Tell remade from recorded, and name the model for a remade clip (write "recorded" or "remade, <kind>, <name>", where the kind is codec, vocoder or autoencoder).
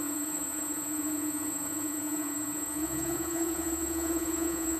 remade, vocoder, Vocos